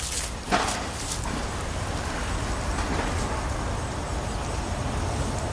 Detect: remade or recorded recorded